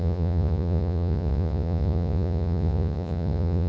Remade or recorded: remade